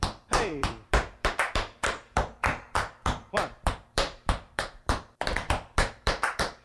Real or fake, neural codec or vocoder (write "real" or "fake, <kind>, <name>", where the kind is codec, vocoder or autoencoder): fake, vocoder, BigVGAN v2